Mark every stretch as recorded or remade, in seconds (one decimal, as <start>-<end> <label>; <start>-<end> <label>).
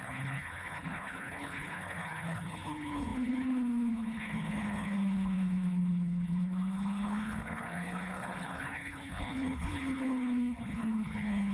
0.0-11.5 remade